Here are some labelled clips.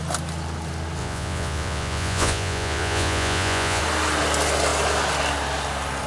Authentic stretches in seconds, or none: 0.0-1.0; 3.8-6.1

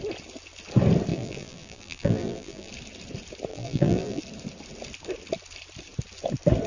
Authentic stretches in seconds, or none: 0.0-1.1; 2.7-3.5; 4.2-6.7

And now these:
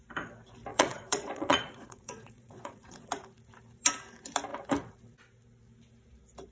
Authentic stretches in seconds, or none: 0.0-0.7; 3.1-6.5